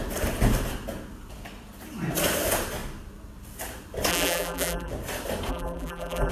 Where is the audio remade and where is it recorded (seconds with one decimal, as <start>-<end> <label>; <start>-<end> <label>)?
0.0-4.1 recorded; 4.1-4.9 remade; 4.9-5.5 recorded; 5.5-6.3 remade